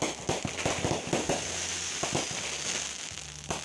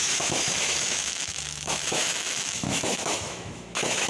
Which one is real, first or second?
first